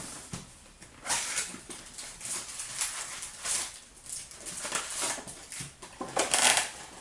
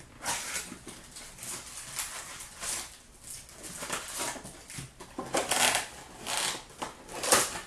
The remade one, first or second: first